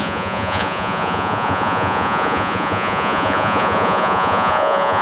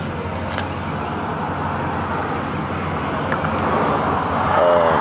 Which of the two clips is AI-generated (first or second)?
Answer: first